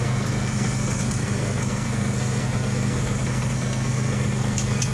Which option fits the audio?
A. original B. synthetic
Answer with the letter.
B